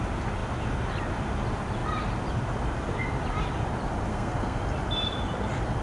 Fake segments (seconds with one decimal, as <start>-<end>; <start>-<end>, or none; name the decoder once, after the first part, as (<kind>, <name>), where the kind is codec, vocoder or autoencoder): 4.1-4.6 (codec, SNAC)